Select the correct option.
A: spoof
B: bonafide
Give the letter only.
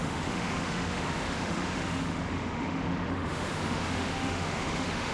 A